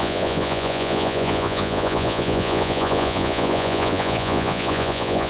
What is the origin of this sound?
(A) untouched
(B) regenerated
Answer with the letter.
B